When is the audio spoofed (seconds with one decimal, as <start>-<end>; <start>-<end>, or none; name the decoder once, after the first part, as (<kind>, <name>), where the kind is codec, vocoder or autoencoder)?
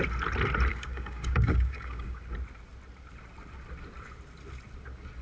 0.7-2.2 (codec, DAC)